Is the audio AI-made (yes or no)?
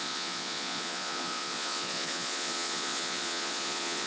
yes